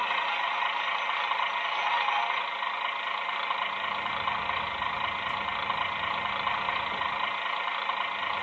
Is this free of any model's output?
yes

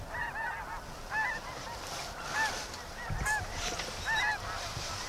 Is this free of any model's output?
yes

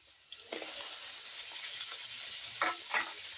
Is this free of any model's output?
yes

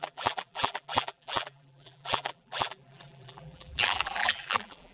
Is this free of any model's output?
no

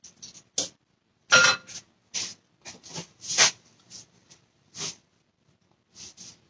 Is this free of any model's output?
yes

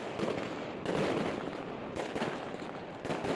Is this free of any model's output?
yes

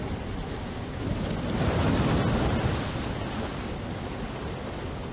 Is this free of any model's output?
yes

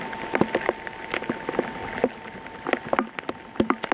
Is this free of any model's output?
yes